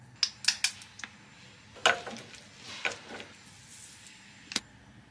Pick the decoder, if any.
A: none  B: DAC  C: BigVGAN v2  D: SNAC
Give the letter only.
A